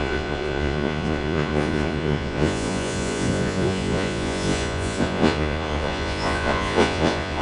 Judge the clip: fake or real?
fake